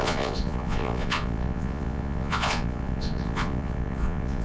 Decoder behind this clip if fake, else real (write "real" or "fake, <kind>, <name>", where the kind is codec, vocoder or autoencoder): fake, vocoder, Vocos